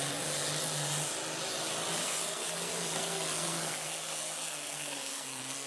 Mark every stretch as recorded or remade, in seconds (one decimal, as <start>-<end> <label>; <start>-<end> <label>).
0.0-2.0 recorded; 2.0-5.7 remade